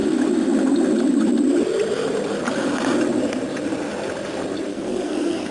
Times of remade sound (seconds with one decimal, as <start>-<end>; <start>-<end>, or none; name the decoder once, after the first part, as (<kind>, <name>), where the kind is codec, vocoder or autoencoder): 4.7-5.5 (codec, SNAC)